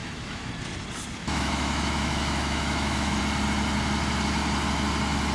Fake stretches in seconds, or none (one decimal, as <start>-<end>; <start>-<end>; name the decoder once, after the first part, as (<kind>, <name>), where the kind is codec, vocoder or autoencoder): 0.0-0.5 (autoencoder, DAC-VAE); 1.2-3.2